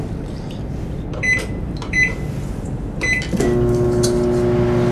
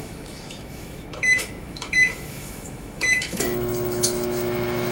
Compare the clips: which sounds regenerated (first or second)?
second